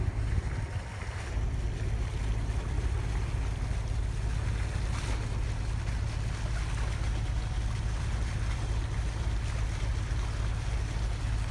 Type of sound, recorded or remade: recorded